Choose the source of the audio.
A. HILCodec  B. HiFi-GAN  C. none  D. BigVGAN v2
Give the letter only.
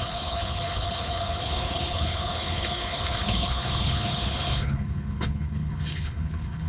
A